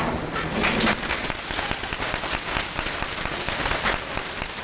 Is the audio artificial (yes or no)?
no